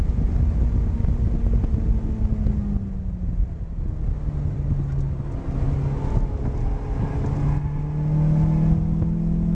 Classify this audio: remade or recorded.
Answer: recorded